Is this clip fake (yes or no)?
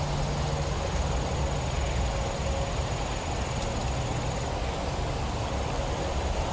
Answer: no